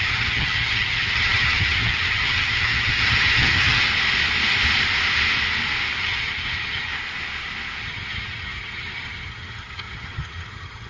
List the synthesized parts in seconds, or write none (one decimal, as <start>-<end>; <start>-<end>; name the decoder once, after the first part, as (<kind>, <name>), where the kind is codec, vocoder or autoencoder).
0.0-3.8 (vocoder, HiFi-GAN); 6.0-6.9; 7.8-10.9